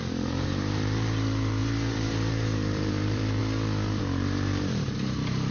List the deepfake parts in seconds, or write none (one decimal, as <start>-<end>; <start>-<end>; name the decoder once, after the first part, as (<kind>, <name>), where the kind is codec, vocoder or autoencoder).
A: 0.0-3.4 (vocoder, BigVGAN v2); 4.0-5.5